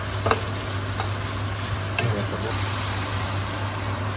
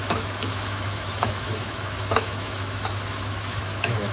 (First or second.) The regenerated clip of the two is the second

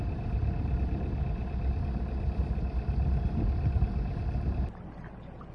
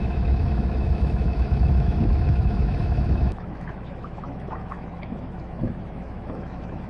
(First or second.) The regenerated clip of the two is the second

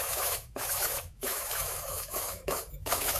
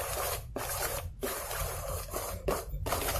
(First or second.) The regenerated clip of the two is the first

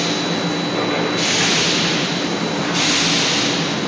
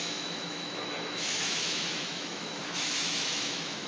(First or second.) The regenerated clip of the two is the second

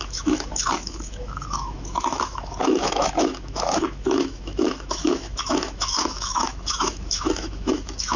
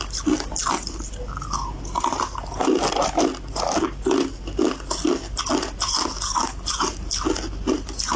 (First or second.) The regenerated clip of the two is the first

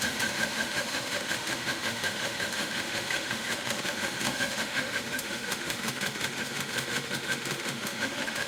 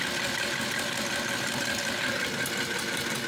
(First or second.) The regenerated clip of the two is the first